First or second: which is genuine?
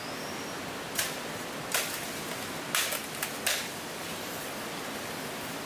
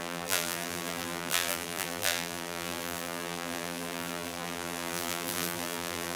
first